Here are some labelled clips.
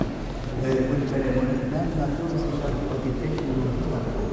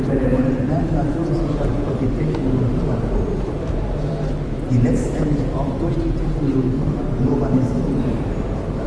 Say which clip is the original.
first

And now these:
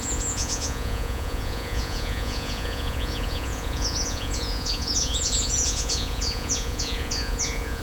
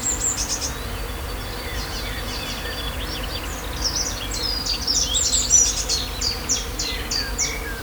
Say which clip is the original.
second